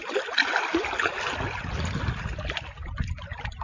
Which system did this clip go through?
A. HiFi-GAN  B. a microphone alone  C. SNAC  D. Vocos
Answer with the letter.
B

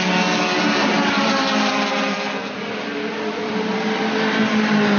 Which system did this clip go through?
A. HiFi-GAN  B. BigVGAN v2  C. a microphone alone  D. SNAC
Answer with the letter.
C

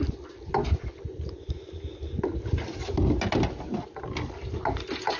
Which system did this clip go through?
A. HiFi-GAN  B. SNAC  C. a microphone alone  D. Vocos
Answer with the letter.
C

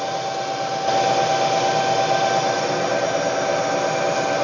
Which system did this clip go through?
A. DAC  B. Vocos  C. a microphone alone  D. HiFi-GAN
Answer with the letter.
C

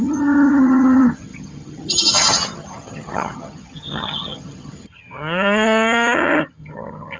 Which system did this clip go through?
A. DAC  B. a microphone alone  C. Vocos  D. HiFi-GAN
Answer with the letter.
D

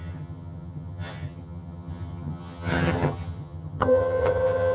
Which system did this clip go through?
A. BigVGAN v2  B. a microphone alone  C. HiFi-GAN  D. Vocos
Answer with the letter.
C